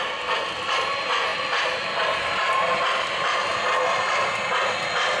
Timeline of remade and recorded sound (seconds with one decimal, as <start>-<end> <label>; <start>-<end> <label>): 0.0-1.3 recorded; 1.3-4.4 remade; 4.4-5.2 recorded